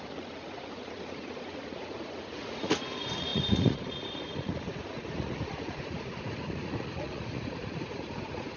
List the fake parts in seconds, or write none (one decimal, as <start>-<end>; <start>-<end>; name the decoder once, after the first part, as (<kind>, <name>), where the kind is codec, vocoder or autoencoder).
0.0-8.6 (vocoder, Vocos)